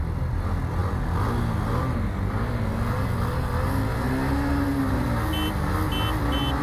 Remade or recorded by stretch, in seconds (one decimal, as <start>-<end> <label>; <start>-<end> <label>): 0.0-6.6 recorded